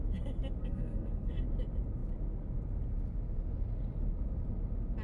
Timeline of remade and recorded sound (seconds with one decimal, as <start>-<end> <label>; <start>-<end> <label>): 0.0-0.6 recorded; 0.6-1.3 remade; 1.3-5.0 recorded